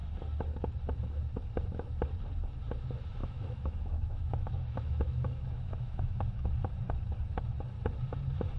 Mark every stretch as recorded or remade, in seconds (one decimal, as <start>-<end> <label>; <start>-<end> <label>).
0.0-3.2 recorded; 3.2-6.5 remade; 6.5-8.6 recorded